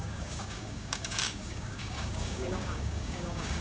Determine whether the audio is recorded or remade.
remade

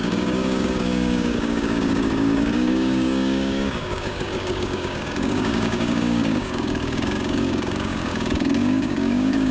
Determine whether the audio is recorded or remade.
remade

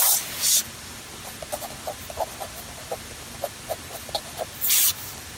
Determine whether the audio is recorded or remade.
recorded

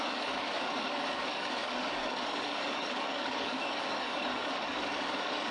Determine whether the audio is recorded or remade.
remade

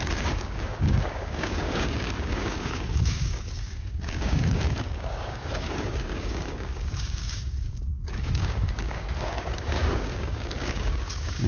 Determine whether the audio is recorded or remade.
remade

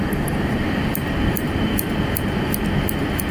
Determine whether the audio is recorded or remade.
recorded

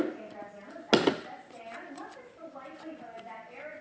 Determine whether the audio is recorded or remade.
recorded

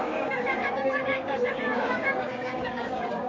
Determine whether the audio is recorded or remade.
remade